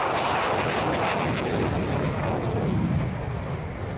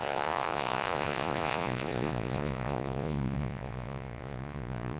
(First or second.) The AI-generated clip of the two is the second